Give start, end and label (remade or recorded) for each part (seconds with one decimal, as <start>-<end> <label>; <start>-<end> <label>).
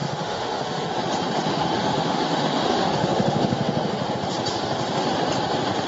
0.0-0.9 remade; 0.9-1.5 recorded; 1.5-4.1 remade; 4.1-5.9 recorded